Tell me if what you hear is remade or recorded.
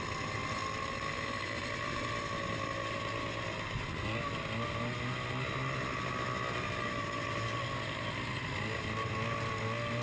recorded